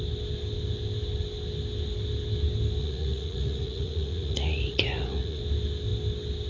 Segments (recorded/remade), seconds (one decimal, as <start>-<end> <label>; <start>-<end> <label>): 0.0-2.8 recorded; 2.8-5.4 remade; 5.4-6.5 recorded